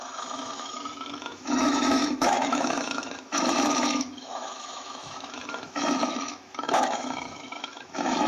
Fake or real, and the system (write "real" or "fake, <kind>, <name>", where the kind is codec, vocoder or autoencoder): fake, autoencoder, DAC-VAE